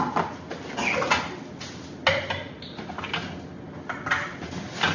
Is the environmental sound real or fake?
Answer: real